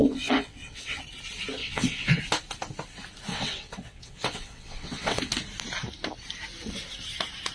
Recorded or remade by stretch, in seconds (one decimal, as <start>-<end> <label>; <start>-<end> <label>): 0.0-1.0 remade; 1.0-1.6 recorded; 1.6-2.2 remade; 2.2-3.3 recorded; 3.3-5.3 remade; 5.3-7.5 recorded

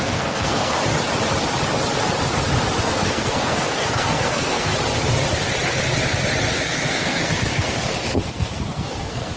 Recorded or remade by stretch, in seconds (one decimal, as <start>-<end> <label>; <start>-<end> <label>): 0.0-0.8 remade; 0.8-2.8 recorded; 2.8-4.7 remade; 4.7-6.6 recorded; 6.6-9.4 remade